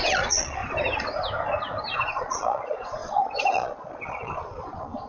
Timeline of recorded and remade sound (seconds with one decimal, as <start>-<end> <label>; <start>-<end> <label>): 0.0-0.6 remade; 0.6-1.9 recorded; 1.9-5.1 remade